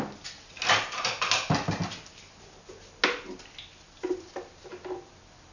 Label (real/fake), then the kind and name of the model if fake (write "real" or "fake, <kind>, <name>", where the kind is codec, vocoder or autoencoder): real